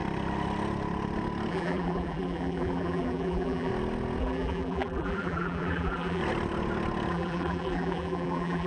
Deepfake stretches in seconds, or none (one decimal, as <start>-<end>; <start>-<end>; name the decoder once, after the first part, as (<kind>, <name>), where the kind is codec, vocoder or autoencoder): 1.5-3.7 (vocoder, BigVGAN v2); 4.2-6.2; 7.1-8.7

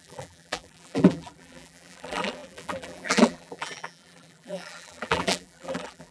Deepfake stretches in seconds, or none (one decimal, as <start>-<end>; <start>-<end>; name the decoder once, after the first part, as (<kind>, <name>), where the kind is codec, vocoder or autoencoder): 0.0-6.1 (vocoder, BigVGAN v2)

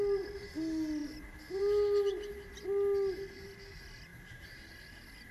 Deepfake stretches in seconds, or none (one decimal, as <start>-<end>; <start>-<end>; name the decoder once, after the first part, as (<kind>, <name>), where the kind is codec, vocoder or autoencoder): 4.1-4.8 (vocoder, BigVGAN v2)

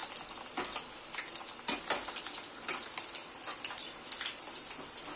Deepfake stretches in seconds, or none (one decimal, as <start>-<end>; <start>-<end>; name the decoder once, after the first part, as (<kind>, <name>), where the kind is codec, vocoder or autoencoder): 3.2-4.4 (vocoder, BigVGAN v2)